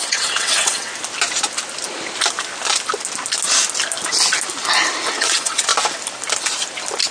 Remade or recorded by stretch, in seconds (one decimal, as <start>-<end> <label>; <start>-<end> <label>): 0.0-0.9 remade; 0.9-5.2 recorded; 5.2-5.7 remade; 5.7-7.1 recorded